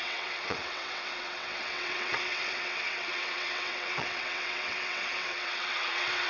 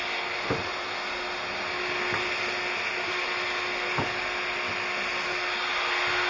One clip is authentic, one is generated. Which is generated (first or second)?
first